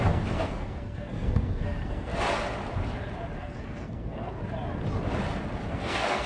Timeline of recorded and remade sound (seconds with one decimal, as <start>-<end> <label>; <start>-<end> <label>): 0.0-2.1 remade; 2.1-3.4 recorded; 3.4-4.4 remade; 4.4-5.7 recorded; 5.7-6.3 remade